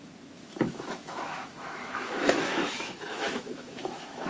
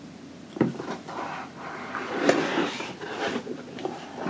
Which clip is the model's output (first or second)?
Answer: first